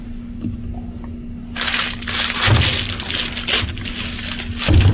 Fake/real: real